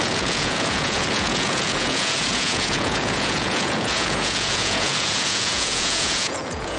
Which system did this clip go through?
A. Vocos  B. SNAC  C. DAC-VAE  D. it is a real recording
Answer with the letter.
A